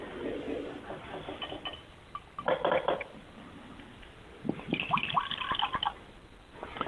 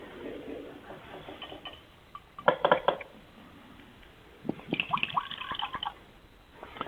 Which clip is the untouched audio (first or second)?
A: first